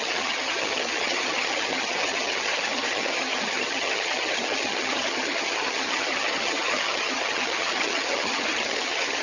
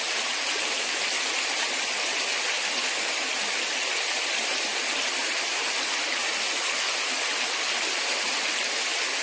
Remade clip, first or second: first